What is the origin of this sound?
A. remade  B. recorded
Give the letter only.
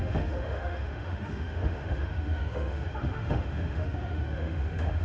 A